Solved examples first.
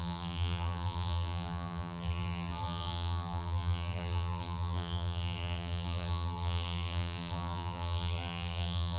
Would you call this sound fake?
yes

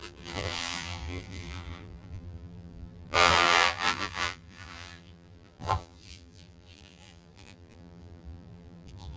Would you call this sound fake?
yes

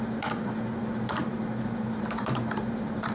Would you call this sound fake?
yes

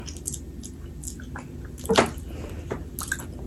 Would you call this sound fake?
no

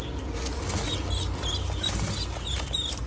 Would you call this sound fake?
no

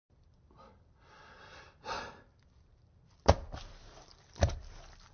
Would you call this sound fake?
yes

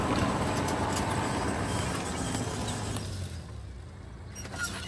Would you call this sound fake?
no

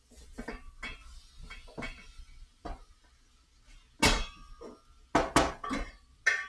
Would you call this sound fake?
no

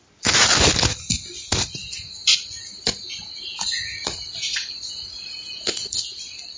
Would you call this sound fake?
no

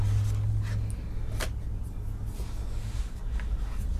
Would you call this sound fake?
no